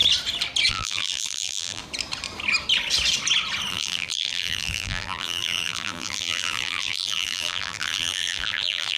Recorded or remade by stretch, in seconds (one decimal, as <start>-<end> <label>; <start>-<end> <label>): 0.0-0.7 recorded; 0.7-1.8 remade; 1.8-3.7 recorded; 3.7-9.0 remade

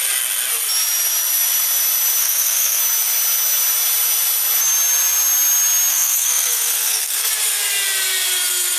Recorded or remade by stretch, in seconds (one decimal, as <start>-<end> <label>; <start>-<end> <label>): 0.0-2.2 recorded; 2.2-2.8 remade; 2.8-5.9 recorded; 5.9-7.3 remade; 7.3-8.8 recorded

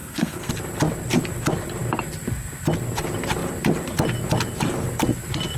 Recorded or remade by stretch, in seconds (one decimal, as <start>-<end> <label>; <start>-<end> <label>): 0.0-0.5 remade; 0.5-5.6 recorded

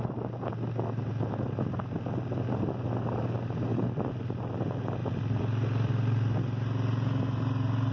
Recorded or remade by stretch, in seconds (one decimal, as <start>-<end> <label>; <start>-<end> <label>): 0.0-3.7 recorded; 3.7-4.2 remade; 4.2-5.0 recorded; 5.0-5.9 remade; 5.9-7.9 recorded

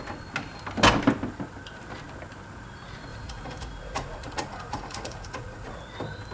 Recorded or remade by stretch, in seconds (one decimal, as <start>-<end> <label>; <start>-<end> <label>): 0.0-3.1 recorded; 3.1-5.8 remade; 5.8-6.3 recorded

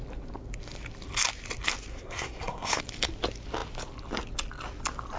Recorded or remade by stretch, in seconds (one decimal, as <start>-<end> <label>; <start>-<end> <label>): 0.0-1.9 recorded; 1.9-2.8 remade; 2.8-5.2 recorded